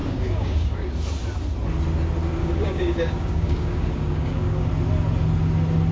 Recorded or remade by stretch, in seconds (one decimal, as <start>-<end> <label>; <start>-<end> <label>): 0.0-0.9 remade; 0.9-2.4 recorded; 2.4-4.7 remade; 4.7-5.9 recorded